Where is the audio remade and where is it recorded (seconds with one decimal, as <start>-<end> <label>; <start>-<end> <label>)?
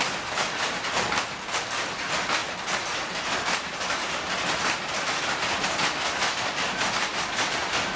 0.0-8.0 recorded